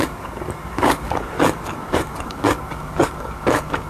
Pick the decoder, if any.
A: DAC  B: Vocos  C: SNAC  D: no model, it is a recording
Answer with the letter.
A